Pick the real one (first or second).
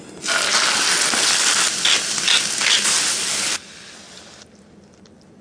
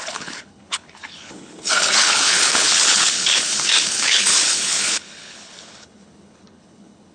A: first